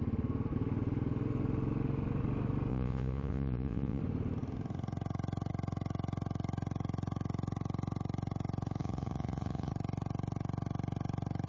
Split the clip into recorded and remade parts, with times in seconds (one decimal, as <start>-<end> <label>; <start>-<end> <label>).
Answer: 0.0-2.7 recorded; 2.7-4.0 remade; 4.0-8.8 recorded; 8.8-9.7 remade; 9.7-11.5 recorded